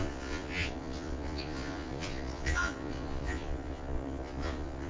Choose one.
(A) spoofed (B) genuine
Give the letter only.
A